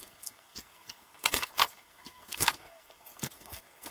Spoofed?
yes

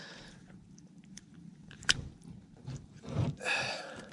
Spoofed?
yes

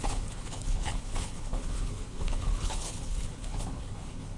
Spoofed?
yes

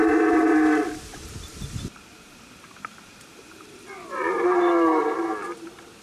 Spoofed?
yes